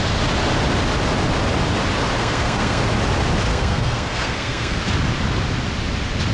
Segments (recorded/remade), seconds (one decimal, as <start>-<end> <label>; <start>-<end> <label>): 0.0-2.2 recorded; 2.2-2.8 remade; 2.8-3.5 recorded; 3.5-4.8 remade; 4.8-6.3 recorded